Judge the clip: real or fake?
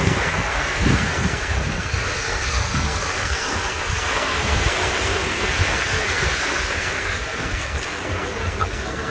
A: fake